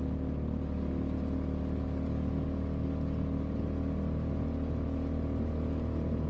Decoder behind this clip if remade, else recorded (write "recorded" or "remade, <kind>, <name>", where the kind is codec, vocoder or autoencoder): recorded